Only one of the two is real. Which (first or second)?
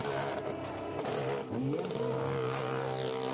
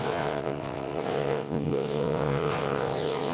first